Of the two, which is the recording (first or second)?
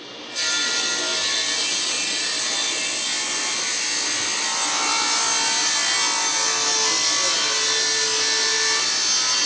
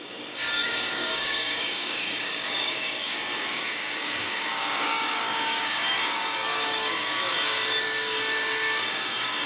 first